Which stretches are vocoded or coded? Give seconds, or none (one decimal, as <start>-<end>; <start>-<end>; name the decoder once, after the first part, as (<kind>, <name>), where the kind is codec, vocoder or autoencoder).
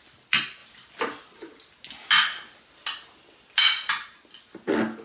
none